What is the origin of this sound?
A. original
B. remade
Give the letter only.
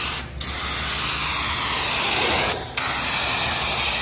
A